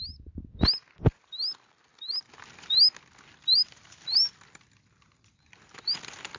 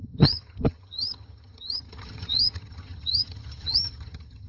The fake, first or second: second